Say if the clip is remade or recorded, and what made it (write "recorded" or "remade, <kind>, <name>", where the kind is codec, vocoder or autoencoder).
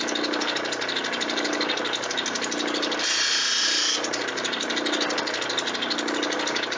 recorded